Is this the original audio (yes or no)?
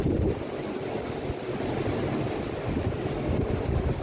yes